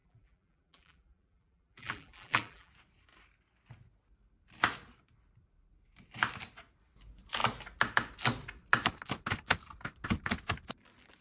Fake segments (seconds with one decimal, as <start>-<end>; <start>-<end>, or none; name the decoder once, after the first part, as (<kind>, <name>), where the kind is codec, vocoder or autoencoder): 0.0-2.7 (vocoder, BigVGAN v2)